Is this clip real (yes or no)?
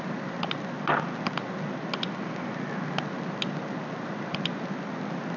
yes